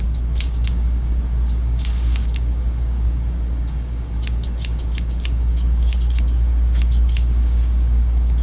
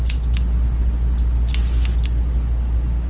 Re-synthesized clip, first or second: first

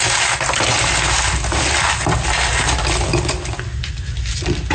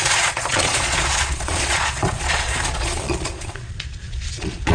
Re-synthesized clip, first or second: second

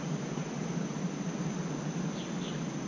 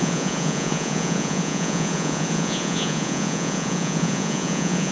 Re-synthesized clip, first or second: second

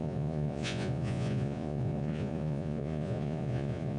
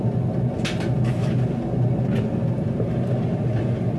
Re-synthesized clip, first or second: first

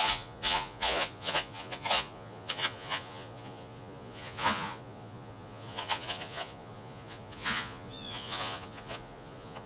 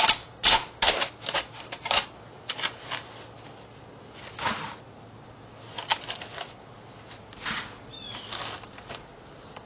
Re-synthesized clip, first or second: first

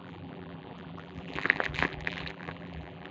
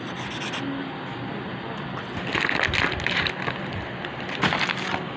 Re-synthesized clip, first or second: first